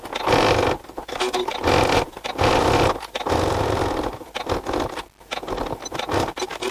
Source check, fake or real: real